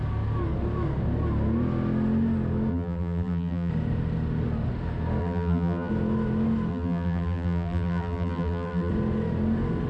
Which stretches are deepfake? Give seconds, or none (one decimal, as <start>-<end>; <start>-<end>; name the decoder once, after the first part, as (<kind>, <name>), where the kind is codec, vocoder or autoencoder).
2.7-3.7 (vocoder, BigVGAN v2); 5.2-5.9; 6.7-8.9